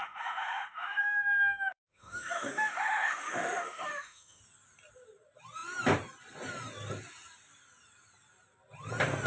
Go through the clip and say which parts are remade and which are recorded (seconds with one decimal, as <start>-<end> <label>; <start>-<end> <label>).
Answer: 0.0-4.4 remade; 4.4-9.3 recorded